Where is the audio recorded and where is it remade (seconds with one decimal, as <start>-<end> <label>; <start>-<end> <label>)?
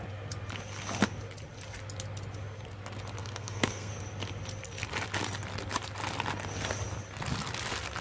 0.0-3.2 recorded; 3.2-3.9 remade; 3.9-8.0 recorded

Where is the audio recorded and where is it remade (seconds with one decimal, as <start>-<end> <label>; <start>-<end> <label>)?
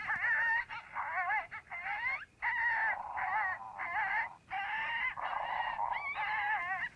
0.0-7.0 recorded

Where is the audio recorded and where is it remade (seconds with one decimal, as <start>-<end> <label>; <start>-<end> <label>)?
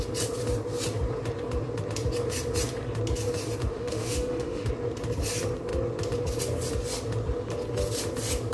0.0-3.6 recorded; 3.6-4.7 remade; 4.7-8.5 recorded